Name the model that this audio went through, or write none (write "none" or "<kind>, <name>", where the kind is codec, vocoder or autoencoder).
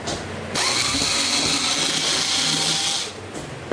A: none